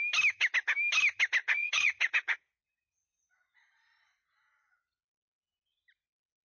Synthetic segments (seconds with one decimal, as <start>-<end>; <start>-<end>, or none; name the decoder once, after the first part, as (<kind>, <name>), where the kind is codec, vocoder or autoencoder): 1.4-5.2 (vocoder, Vocos)